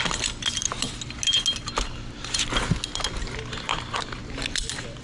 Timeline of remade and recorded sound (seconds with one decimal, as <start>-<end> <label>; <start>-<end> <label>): 0.0-5.0 recorded